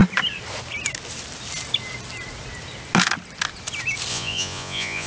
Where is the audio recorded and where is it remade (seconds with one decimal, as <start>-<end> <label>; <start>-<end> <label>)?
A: 0.0-4.1 recorded; 4.1-5.1 remade